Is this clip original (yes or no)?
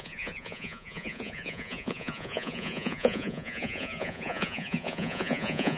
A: no